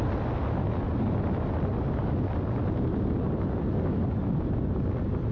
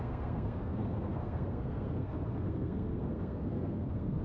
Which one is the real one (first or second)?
first